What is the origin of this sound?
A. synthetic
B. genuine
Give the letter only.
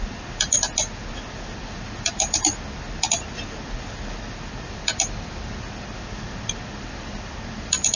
B